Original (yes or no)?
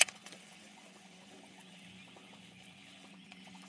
no